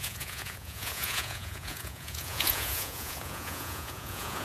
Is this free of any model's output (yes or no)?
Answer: no